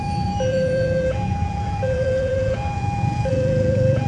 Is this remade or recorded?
remade